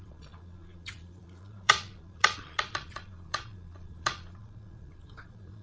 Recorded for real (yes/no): no